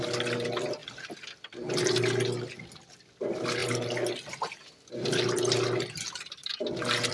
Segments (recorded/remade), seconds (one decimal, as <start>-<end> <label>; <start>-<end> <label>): 0.0-7.1 recorded

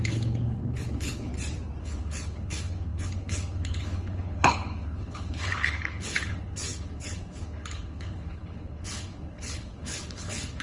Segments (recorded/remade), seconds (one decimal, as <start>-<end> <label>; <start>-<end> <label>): 0.0-1.3 remade; 1.3-1.8 recorded; 1.8-10.6 remade

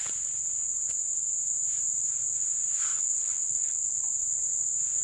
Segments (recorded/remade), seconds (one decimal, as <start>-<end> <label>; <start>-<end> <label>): 0.0-2.9 recorded; 2.9-4.0 remade; 4.0-5.0 recorded

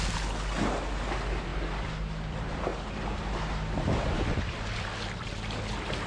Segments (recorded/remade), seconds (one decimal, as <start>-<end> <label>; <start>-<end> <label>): 0.0-6.1 recorded

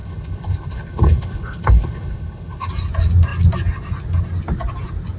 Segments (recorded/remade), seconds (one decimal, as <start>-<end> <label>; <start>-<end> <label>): 0.0-2.7 remade; 2.7-5.2 recorded

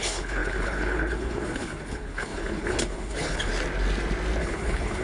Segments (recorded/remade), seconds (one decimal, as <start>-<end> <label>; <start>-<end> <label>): 0.0-3.5 remade; 3.5-4.4 recorded; 4.4-5.0 remade

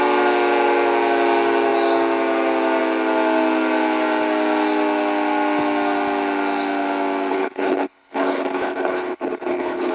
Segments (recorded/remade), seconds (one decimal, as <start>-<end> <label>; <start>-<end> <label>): 0.0-7.3 recorded; 7.3-9.9 remade